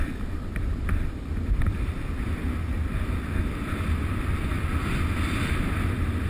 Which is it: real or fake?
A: real